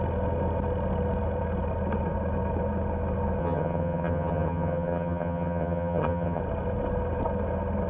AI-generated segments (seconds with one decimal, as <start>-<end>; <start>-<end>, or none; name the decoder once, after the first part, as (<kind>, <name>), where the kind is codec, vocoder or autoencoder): 3.4-6.4 (vocoder, HiFi-GAN)